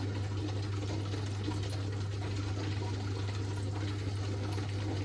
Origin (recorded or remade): recorded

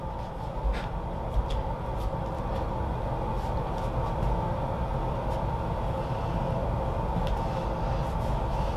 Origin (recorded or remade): recorded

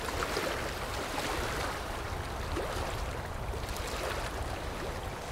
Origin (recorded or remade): recorded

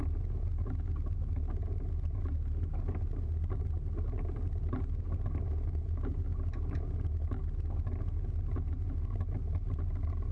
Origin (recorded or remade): recorded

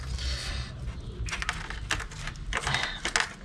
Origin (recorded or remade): recorded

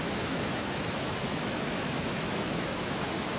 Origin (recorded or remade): remade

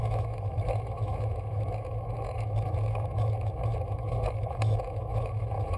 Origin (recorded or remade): remade